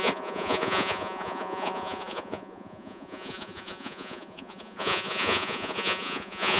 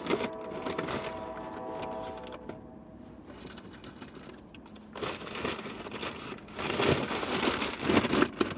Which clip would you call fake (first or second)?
first